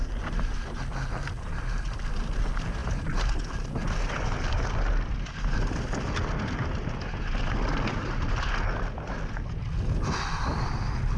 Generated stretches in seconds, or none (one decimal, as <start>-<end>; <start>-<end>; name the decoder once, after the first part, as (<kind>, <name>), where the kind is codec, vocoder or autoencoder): none